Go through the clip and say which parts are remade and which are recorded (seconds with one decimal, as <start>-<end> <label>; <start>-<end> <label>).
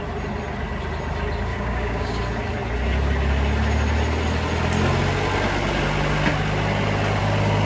0.0-1.5 recorded; 1.5-2.2 remade; 2.2-7.7 recorded